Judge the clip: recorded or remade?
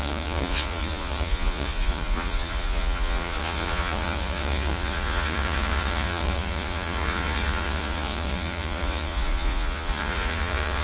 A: remade